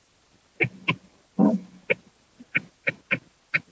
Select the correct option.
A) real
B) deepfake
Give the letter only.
A